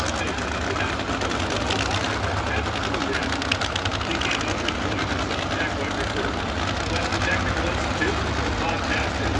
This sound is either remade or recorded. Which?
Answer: recorded